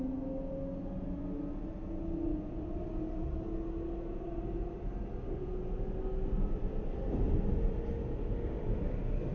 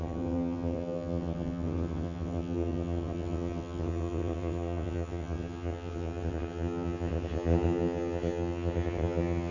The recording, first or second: first